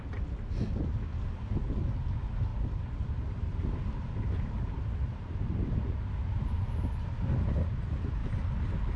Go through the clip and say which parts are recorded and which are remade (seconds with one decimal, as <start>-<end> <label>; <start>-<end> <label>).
0.0-2.5 recorded; 2.5-6.7 remade; 6.7-9.0 recorded

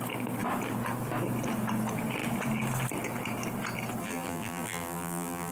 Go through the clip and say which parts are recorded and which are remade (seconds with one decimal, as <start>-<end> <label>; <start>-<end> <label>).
0.0-4.0 recorded; 4.0-5.5 remade

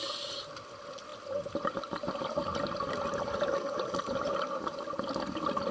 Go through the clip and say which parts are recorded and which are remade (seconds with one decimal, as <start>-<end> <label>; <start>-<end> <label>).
0.0-5.7 recorded

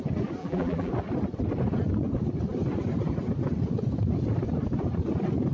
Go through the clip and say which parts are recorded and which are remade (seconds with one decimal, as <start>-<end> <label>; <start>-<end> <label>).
0.0-0.4 recorded; 0.4-0.9 remade; 0.9-5.5 recorded